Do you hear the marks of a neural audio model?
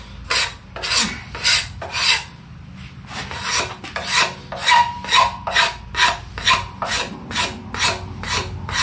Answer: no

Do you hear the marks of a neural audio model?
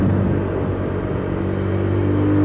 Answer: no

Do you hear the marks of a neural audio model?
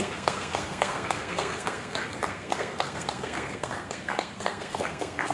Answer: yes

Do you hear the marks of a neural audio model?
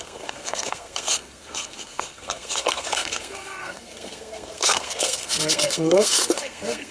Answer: yes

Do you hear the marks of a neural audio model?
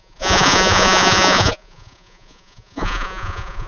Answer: yes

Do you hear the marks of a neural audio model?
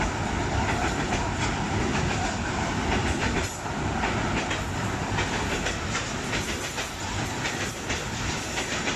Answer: no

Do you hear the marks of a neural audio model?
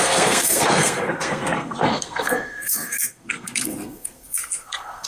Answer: yes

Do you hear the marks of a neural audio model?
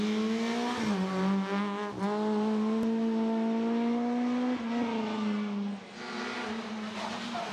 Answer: no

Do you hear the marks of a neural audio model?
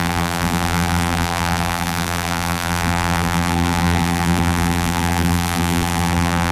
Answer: yes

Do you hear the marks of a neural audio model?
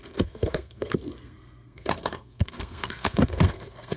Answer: yes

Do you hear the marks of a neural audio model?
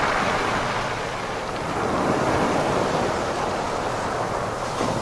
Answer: yes